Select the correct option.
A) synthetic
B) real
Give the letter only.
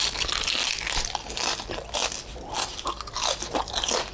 B